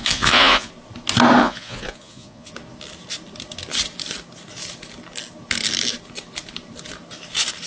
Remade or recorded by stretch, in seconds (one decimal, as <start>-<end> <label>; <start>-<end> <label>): 0.0-0.7 remade; 0.7-1.4 recorded; 1.4-2.5 remade; 2.5-7.7 recorded